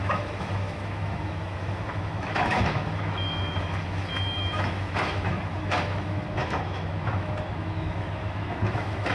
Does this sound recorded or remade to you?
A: remade